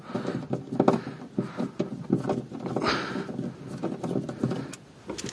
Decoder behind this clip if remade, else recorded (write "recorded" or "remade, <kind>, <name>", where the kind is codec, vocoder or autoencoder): recorded